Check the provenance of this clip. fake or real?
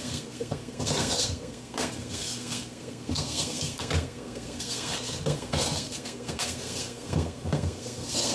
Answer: fake